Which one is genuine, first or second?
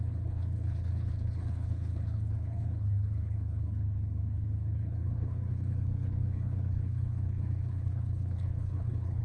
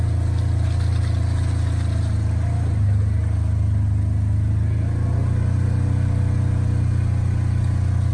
second